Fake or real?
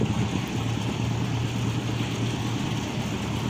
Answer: real